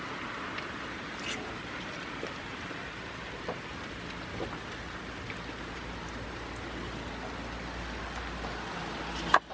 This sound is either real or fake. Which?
real